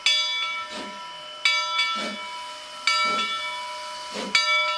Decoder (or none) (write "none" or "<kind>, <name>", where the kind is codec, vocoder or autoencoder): none